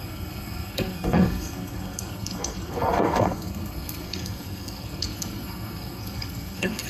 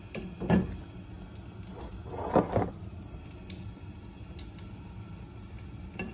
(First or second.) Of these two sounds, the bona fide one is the second